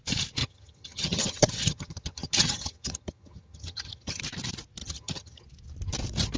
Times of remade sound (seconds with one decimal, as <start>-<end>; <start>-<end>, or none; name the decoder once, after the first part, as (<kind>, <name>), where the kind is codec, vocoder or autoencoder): 0.4-4.2 (vocoder, HiFi-GAN); 4.8-5.4

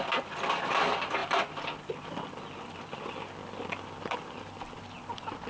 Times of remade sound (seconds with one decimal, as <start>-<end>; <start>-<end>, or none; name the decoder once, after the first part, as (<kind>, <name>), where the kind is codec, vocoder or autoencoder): none

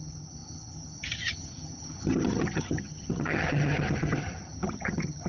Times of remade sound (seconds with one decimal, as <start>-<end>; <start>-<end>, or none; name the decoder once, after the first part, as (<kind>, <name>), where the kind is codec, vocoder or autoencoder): 0.0-5.3 (vocoder, HiFi-GAN)

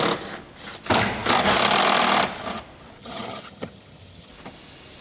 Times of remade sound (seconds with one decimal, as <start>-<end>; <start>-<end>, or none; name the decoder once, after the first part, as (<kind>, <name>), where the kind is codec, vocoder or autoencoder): 3.0-4.3 (vocoder, HiFi-GAN)

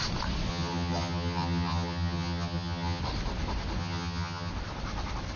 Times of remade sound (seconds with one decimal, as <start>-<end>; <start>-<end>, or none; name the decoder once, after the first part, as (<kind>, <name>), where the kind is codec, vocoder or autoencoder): 0.5-3.0 (vocoder, HiFi-GAN); 3.8-4.5

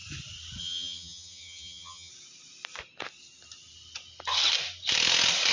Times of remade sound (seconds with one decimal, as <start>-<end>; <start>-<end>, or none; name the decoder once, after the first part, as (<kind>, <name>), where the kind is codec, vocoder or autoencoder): 0.6-2.1 (vocoder, HiFi-GAN)